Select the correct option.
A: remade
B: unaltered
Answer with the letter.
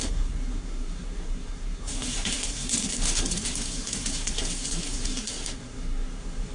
A